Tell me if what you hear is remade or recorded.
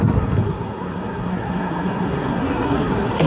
remade